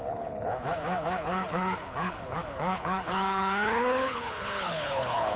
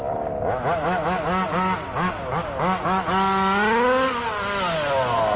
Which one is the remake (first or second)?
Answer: first